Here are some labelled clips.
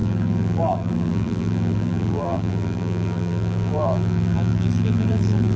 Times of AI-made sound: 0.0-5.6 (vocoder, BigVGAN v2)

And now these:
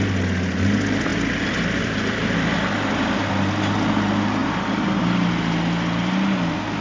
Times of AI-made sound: none

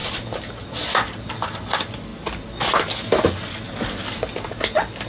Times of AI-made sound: none

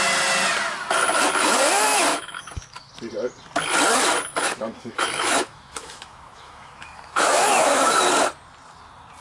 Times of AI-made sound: 2.1-2.9 (autoencoder, DAC-VAE); 4.3-8.0